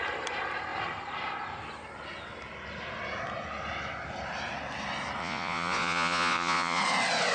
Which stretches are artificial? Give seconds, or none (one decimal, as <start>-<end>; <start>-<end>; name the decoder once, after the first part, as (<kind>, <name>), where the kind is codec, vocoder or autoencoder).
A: 5.2-6.8 (vocoder, Vocos)